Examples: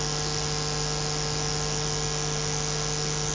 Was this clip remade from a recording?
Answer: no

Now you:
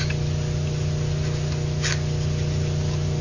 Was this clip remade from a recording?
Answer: no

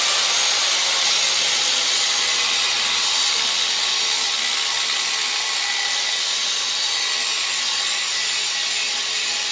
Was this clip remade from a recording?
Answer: no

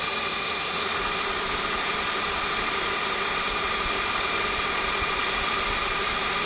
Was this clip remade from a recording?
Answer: no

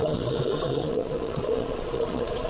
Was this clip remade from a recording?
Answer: yes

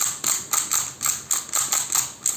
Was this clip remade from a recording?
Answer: no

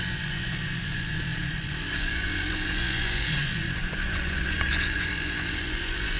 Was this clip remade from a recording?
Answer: yes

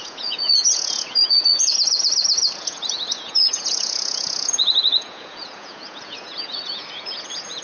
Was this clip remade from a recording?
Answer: yes